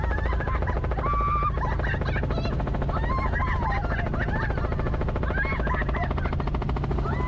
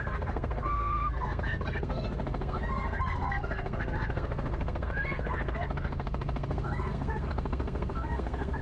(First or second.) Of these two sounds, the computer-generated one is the second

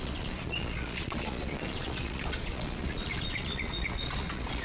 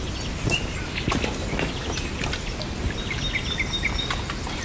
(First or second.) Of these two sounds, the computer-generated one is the first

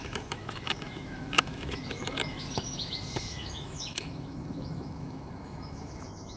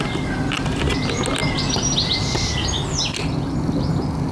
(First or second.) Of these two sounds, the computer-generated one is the first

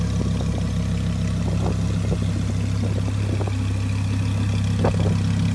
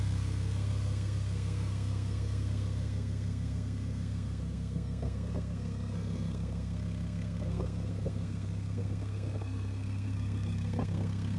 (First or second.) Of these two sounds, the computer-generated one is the second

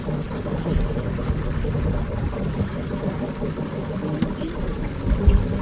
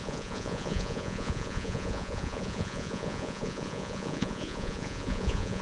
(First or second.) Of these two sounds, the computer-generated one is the second